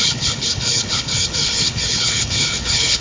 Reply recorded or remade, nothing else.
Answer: remade